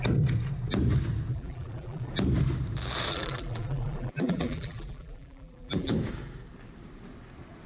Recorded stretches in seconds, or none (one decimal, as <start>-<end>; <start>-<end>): 0.0-1.3; 2.1-3.1; 5.9-7.7